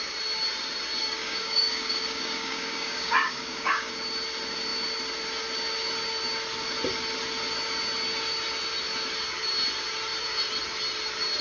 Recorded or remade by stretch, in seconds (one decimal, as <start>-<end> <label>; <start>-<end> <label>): 0.0-1.0 recorded; 1.0-3.9 remade; 3.9-11.4 recorded

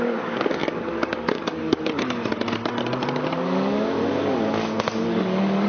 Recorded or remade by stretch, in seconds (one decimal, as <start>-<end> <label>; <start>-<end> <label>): 0.0-4.0 remade; 4.0-5.0 recorded; 5.0-5.7 remade

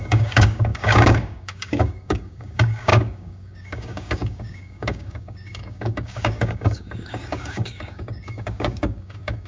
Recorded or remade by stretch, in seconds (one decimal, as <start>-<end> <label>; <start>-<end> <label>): 0.0-9.5 remade

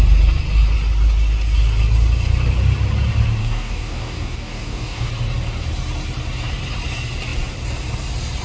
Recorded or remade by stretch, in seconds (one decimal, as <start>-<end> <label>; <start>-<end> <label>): 0.0-3.4 recorded; 3.4-5.1 remade; 5.1-8.4 recorded

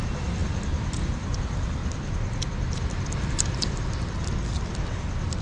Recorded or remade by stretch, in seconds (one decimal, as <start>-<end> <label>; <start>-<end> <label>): 0.0-5.4 recorded